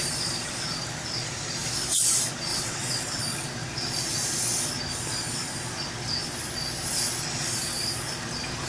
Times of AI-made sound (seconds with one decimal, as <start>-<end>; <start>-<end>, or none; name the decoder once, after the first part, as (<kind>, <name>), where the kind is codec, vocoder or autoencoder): 2.5-3.2 (vocoder, WaveNeXt)